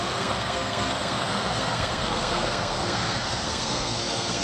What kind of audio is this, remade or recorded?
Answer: remade